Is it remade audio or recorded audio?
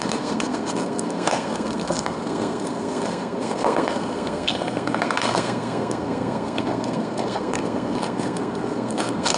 remade